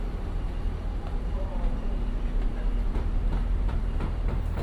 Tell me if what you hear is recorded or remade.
remade